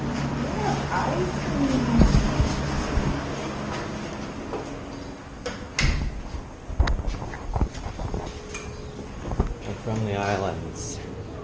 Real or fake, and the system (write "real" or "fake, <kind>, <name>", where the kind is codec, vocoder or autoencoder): real